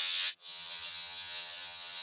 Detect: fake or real fake